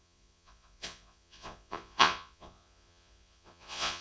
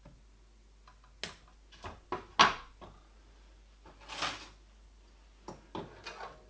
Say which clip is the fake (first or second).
first